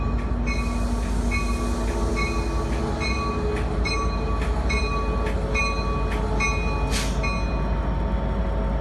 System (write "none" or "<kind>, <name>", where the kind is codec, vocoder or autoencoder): none